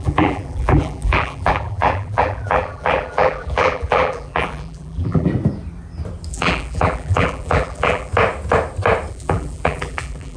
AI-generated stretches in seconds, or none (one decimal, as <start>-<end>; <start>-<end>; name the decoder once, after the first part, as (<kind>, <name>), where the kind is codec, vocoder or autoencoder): 0.0-5.3 (vocoder, BigVGAN v2); 6.3-8.1; 9.1-10.4